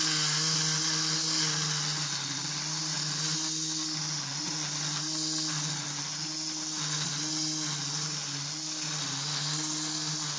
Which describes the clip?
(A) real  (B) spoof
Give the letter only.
A